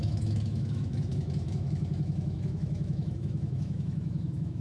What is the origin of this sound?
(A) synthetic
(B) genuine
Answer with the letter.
A